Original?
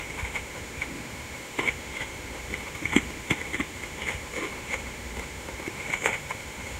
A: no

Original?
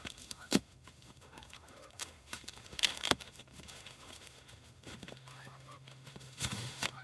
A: no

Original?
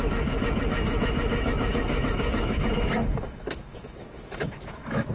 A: no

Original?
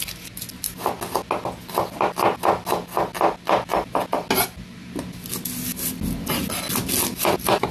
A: yes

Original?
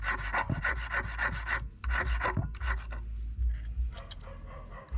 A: yes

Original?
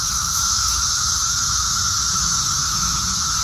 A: no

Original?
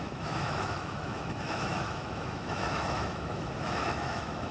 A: no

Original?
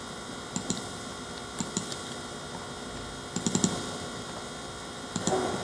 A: yes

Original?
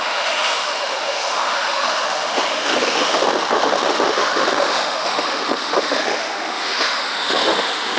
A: no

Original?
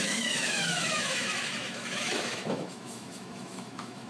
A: no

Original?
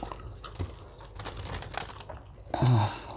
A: yes